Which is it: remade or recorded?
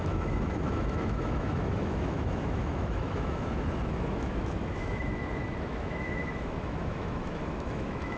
remade